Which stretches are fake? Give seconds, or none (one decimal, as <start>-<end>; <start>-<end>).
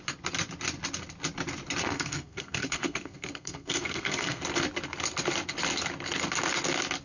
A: 1.8-4.4